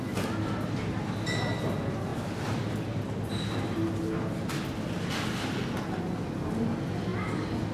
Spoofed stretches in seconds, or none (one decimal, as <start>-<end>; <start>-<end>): none

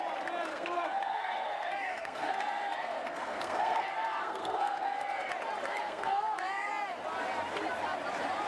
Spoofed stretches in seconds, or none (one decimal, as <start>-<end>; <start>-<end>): 0.5-5.3; 5.7-6.7